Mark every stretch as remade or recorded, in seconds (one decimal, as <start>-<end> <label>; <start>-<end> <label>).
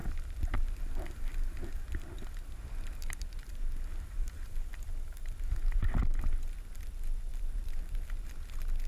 0.0-7.3 recorded; 7.3-8.0 remade; 8.0-8.9 recorded